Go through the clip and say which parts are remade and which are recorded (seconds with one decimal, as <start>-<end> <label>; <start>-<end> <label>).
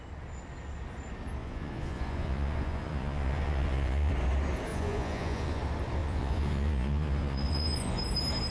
0.0-1.4 recorded; 1.4-4.1 remade; 4.1-4.7 recorded; 4.7-5.6 remade; 5.6-6.0 recorded; 6.0-8.0 remade; 8.0-8.5 recorded